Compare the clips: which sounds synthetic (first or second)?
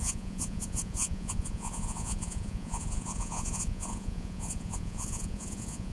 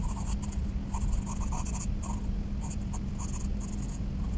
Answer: first